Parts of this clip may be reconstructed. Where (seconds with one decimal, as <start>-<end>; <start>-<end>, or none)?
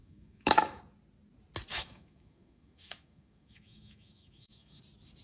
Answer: 0.0-0.8; 1.7-4.8